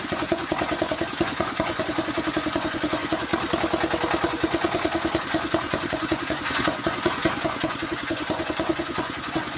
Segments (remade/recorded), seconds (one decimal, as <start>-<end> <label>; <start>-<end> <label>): 0.0-3.3 remade; 3.3-4.3 recorded; 4.3-9.6 remade